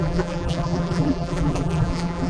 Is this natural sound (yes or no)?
no